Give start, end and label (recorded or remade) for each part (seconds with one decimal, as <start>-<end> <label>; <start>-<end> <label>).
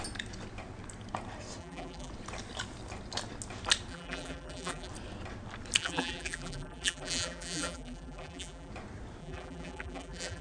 0.0-1.6 recorded; 1.6-2.1 remade; 2.1-3.9 recorded; 3.9-4.9 remade; 4.9-5.8 recorded; 5.8-8.7 remade; 8.7-9.2 recorded; 9.2-10.4 remade